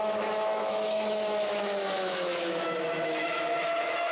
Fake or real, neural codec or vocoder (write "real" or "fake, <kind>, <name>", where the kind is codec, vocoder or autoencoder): fake, autoencoder, DAC-VAE